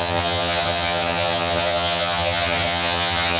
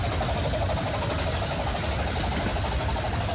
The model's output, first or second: first